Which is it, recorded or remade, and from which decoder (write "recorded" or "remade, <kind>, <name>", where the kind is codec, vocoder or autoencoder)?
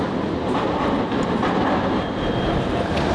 recorded